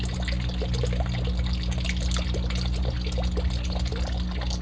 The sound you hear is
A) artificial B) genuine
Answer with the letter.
B